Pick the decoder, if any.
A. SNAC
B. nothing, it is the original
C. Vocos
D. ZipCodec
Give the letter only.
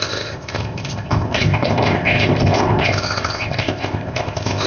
D